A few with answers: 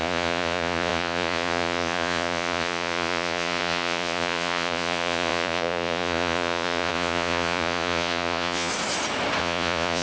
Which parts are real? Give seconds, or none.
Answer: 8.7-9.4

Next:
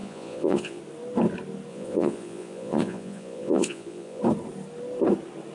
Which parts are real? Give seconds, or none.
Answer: 0.8-1.7; 4.2-5.5

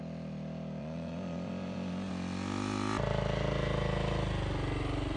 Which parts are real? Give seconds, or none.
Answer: 0.0-0.8; 2.1-5.2

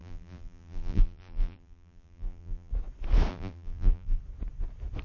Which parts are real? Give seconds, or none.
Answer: 2.7-3.3; 4.2-5.0

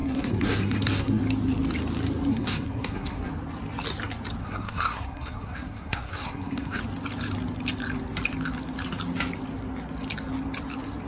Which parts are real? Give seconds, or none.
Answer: 1.2-2.3; 3.3-4.4; 6.8-11.1